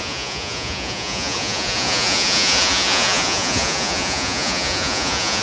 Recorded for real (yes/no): no